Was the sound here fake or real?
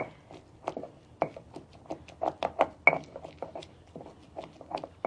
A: real